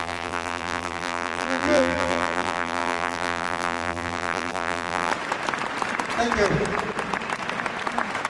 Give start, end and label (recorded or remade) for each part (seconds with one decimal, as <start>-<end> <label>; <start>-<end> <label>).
0.0-5.1 remade; 5.1-8.3 recorded